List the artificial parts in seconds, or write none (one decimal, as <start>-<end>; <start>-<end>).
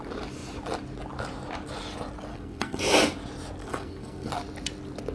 2.3-2.8; 3.6-4.3